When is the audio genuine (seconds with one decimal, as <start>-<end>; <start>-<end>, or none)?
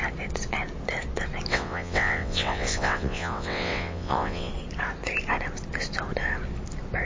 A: 0.0-1.5; 4.5-7.0